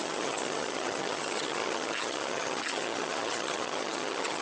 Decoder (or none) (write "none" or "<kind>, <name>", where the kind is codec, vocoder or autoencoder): vocoder, HiFi-GAN